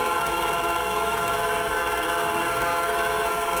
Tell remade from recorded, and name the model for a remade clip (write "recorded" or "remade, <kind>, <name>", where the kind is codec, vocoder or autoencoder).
remade, codec, SNAC